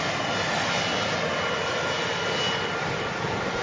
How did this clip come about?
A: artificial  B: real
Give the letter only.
B